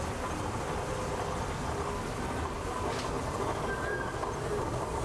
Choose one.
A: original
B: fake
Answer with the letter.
A